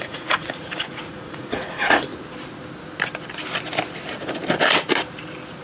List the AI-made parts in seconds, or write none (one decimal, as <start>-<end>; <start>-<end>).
0.0-2.1